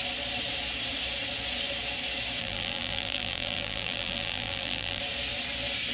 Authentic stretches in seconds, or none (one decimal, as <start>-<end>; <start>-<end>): 0.0-2.4; 5.0-5.9